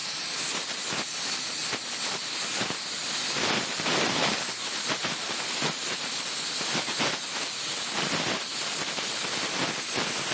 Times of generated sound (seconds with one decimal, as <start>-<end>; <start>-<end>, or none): none